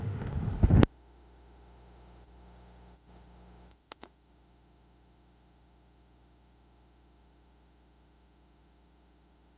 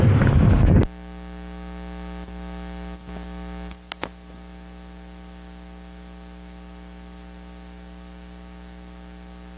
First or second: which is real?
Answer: second